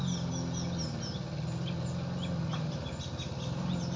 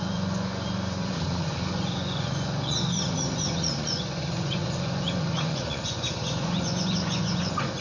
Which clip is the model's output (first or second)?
second